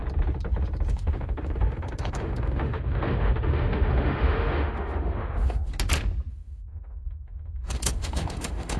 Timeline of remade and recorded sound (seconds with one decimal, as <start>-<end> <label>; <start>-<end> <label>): 0.0-0.9 recorded; 0.9-5.7 remade; 5.7-6.3 recorded; 6.3-8.8 remade